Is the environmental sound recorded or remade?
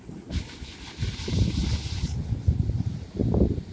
recorded